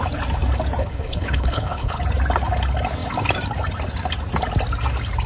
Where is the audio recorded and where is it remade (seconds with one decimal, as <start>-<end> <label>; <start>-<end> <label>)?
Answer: 0.0-0.8 recorded; 0.8-2.0 remade; 2.0-5.3 recorded